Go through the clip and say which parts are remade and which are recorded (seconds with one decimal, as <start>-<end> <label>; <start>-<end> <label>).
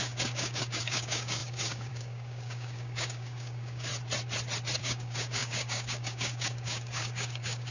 0.0-3.9 remade; 3.9-4.8 recorded; 4.8-7.7 remade